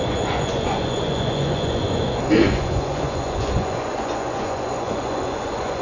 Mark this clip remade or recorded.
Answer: remade